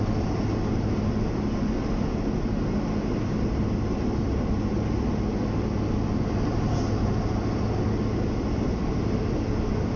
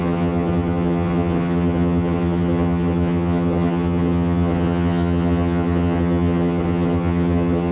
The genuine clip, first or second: first